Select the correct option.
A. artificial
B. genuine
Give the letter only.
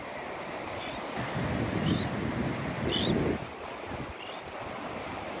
B